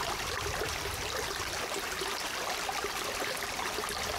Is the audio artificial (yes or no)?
no